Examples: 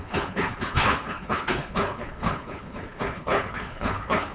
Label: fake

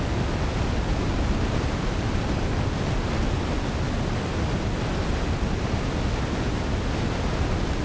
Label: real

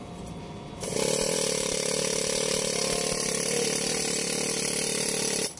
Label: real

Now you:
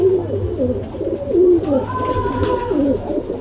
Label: real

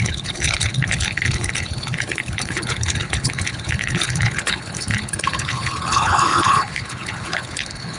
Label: fake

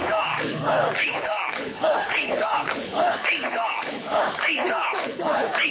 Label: fake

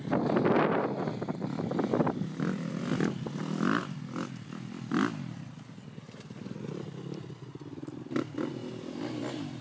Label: real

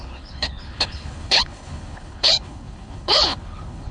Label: fake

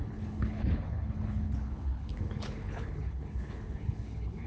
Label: fake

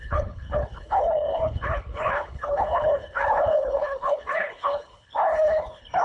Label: fake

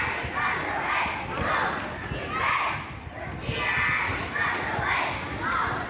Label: real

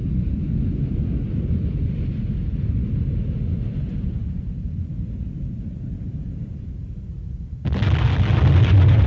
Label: real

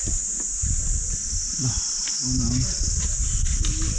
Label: real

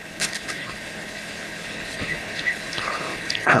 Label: fake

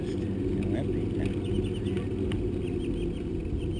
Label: real